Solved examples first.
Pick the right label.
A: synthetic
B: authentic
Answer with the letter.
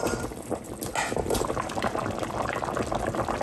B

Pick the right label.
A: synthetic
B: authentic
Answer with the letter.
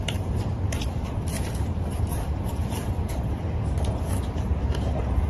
A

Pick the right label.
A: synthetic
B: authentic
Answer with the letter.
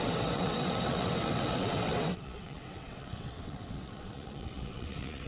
A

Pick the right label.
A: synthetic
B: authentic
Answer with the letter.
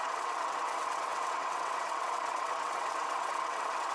A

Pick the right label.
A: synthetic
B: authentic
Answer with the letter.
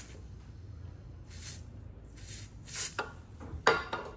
B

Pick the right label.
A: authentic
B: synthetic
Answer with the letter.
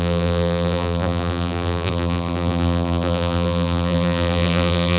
B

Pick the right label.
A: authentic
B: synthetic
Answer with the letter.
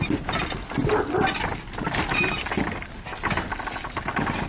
A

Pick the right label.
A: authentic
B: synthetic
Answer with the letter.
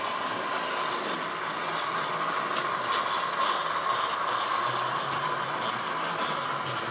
A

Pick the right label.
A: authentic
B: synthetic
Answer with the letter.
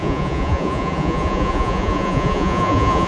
B